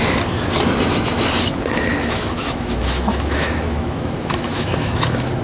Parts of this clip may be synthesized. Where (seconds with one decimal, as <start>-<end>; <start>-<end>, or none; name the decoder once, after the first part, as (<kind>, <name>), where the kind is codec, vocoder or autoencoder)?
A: 1.9-5.4 (autoencoder, DAC-VAE)